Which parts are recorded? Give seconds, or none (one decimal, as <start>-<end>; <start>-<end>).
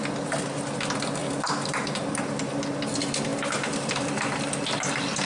0.0-1.2; 2.5-5.2